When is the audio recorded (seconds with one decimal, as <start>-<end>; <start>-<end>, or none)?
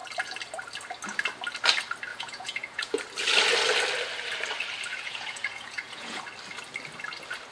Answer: 0.0-2.1; 3.0-4.9; 6.2-7.5